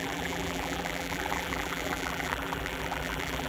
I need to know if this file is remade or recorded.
remade